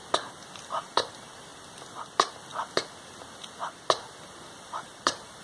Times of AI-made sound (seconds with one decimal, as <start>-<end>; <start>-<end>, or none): 0.7-1.5; 4.7-5.4